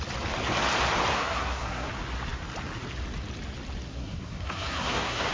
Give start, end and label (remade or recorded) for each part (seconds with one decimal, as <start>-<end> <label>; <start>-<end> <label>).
0.0-1.1 recorded; 1.1-1.9 remade; 1.9-3.9 recorded; 3.9-5.3 remade